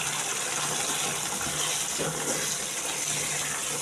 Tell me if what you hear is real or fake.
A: real